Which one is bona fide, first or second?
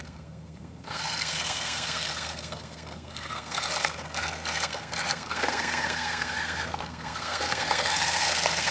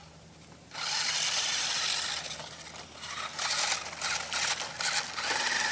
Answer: second